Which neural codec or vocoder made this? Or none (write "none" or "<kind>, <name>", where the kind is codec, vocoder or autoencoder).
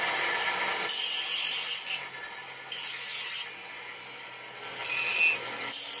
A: none